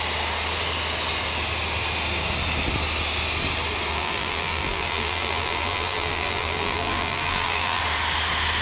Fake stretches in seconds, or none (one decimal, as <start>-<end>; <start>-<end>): 3.9-7.8